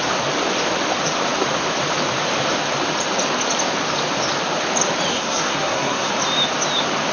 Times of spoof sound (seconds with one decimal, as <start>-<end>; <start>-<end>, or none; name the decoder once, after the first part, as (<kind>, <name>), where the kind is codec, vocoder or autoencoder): 5.1-6.1 (codec, SNAC)